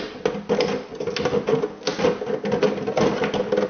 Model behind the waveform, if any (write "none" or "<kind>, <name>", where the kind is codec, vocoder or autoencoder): none